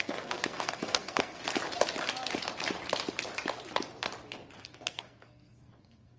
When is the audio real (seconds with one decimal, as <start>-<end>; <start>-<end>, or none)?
1.4-4.6